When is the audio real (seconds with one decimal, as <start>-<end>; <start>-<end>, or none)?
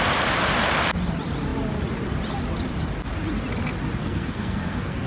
0.0-4.0